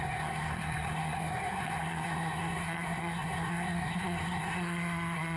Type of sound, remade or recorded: remade